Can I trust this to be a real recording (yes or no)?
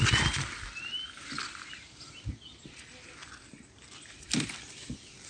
yes